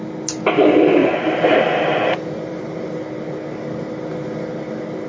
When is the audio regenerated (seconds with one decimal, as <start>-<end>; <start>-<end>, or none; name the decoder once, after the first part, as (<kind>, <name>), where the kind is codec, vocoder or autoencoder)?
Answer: 1.0-3.0 (vocoder, BigVGAN v2)